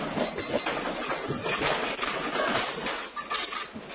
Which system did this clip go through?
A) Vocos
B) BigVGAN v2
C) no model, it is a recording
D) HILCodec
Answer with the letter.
C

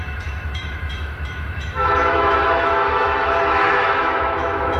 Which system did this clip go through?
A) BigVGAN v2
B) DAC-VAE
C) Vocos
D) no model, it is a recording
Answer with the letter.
B